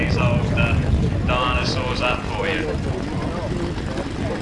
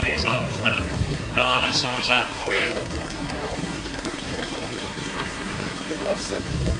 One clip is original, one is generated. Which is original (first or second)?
first